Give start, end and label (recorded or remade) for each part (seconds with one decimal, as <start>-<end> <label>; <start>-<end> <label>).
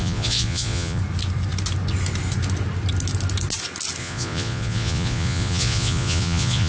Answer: 0.0-1.0 remade; 1.0-4.0 recorded; 4.0-6.7 remade